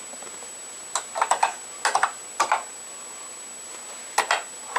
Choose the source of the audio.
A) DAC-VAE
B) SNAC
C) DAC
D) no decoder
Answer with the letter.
D